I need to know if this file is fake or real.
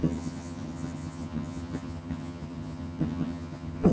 fake